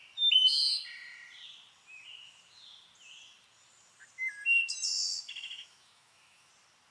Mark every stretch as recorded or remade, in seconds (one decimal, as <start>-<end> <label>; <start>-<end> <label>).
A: 0.0-5.0 recorded; 5.0-6.5 remade; 6.5-6.9 recorded